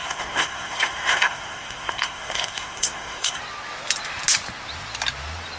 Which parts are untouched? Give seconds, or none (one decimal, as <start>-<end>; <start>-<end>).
3.4-5.6